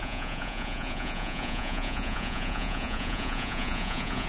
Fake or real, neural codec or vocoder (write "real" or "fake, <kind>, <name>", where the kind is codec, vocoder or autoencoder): fake, vocoder, Vocos